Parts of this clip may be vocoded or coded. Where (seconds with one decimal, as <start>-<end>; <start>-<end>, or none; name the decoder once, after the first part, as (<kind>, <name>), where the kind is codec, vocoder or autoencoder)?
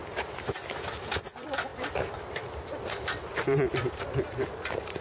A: 0.0-0.5 (vocoder, BigVGAN v2); 1.7-5.0